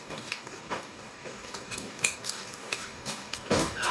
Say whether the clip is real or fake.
fake